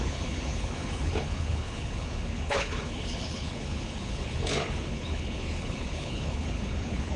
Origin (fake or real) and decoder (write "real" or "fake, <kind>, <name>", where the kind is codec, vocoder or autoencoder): fake, codec, HILCodec